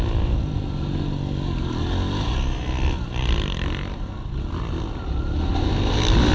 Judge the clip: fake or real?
real